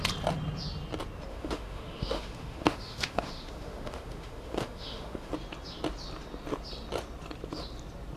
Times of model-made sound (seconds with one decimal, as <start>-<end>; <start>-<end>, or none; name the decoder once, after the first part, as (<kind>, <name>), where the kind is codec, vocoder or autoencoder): 1.3-5.3 (autoencoder, DAC-VAE)